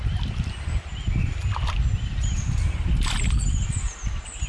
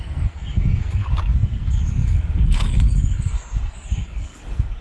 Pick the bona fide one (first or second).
first